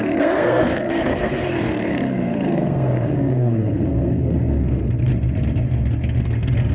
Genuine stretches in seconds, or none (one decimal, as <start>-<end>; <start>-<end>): 5.1-6.2